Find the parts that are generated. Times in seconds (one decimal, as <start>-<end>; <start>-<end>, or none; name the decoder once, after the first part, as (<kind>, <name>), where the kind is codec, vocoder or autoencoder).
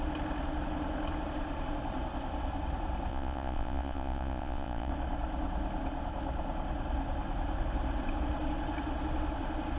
3.1-4.9 (vocoder, Vocos)